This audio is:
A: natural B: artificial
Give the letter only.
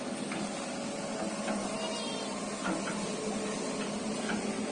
A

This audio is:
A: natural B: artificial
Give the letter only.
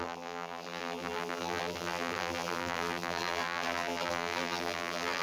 B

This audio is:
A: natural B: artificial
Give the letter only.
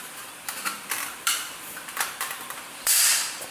B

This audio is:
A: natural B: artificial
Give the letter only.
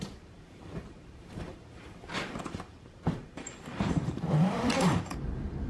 B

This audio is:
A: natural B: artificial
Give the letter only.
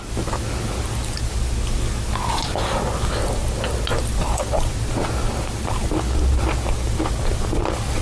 A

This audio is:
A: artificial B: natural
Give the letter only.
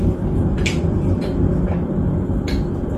A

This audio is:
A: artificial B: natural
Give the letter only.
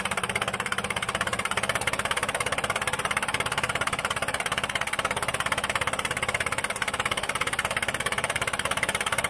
A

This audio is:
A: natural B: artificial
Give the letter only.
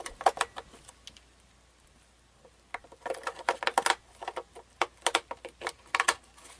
A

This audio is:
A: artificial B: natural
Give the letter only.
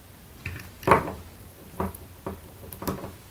A